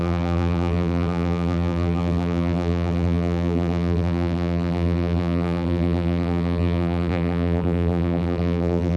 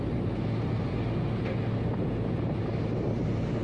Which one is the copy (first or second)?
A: first